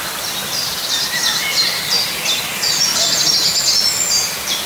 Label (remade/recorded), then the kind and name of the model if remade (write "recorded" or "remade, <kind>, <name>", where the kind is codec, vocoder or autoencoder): recorded